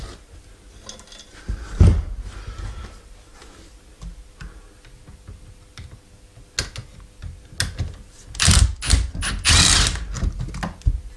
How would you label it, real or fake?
real